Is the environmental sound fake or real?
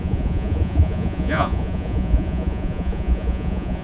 fake